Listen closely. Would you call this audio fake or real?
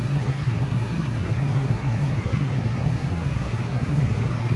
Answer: fake